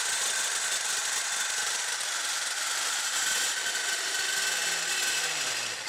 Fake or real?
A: real